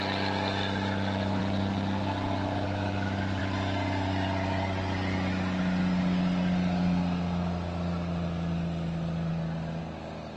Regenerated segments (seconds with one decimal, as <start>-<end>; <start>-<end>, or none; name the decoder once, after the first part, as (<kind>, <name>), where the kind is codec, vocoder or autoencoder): none

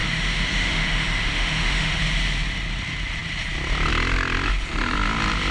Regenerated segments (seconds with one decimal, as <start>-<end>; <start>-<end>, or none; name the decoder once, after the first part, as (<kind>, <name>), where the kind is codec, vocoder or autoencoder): 0.0-2.0 (autoencoder, DAC-VAE)

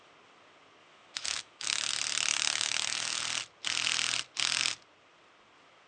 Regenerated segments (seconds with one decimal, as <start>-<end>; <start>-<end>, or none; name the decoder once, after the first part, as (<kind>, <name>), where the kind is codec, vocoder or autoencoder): 0.8-1.9 (autoencoder, DAC-VAE); 2.3-3.2

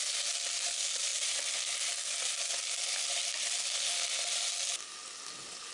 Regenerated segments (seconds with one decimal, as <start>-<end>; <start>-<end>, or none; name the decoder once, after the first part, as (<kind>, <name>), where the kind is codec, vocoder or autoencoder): none

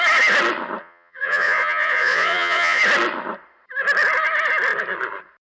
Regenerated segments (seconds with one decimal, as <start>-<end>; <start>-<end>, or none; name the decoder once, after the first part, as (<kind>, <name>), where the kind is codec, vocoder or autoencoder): 0.8-2.8 (vocoder, Vocos)